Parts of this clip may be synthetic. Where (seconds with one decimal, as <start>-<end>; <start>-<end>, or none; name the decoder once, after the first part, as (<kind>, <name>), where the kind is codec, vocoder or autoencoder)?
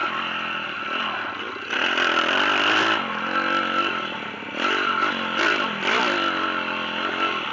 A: none